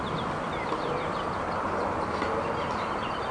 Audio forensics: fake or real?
real